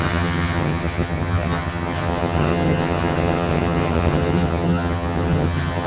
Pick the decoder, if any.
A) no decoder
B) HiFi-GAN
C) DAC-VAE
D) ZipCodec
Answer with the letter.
B